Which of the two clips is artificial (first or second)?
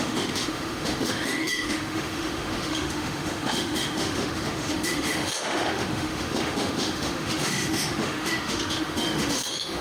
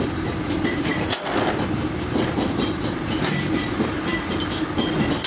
first